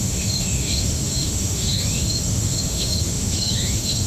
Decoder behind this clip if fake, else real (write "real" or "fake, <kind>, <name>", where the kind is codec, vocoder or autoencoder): fake, autoencoder, DAC-VAE